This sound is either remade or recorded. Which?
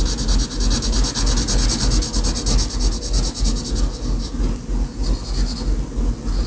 recorded